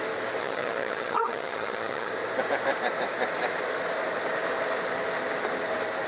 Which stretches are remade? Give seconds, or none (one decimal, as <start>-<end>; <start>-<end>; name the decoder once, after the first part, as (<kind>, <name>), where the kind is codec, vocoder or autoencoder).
0.4-2.1 (vocoder, HiFi-GAN)